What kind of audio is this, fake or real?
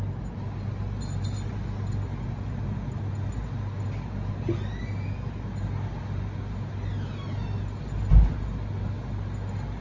real